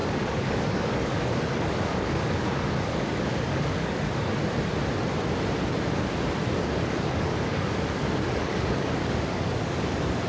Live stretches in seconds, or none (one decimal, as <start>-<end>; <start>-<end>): 4.4-6.6